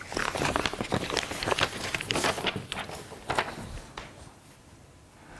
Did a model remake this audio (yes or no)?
no